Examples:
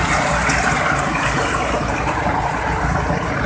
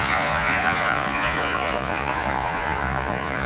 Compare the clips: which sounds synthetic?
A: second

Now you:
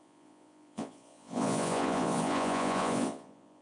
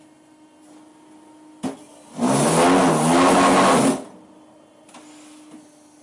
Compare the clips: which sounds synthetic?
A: first